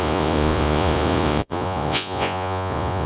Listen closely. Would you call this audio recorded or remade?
remade